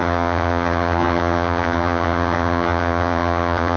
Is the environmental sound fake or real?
fake